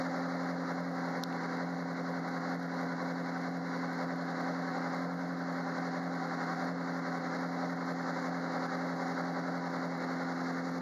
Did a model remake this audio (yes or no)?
no